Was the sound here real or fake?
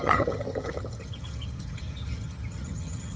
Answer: fake